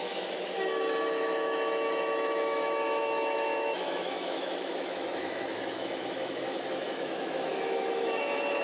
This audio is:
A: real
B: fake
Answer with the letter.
B